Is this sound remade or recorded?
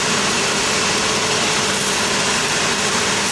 recorded